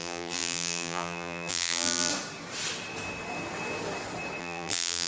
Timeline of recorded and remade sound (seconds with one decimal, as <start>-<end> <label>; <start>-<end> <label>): 0.0-2.1 remade; 2.1-4.4 recorded; 4.4-5.1 remade